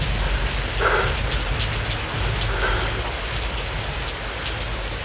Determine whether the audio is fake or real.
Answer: real